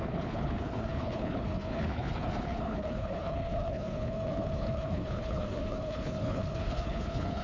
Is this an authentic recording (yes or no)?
no